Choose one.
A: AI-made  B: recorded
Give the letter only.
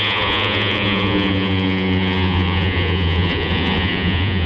A